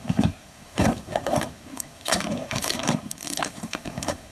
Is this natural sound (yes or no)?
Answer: no